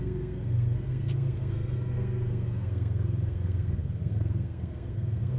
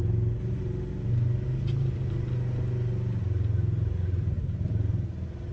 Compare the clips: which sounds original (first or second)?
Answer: second